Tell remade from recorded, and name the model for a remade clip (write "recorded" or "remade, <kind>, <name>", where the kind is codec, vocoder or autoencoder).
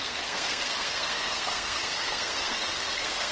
remade, codec, SNAC